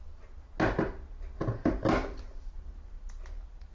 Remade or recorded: recorded